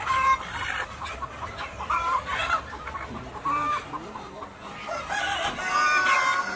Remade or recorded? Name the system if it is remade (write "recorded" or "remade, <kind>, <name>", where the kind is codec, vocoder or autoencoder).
recorded